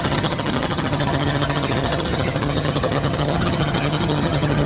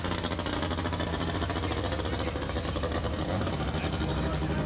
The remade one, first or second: first